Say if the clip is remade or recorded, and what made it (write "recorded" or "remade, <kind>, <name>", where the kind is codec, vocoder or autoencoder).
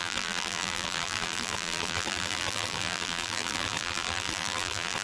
remade, vocoder, BigVGAN v2